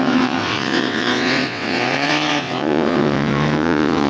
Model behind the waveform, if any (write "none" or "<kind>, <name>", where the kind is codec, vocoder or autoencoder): vocoder, WaveNeXt